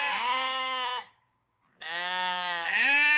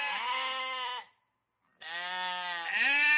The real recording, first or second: second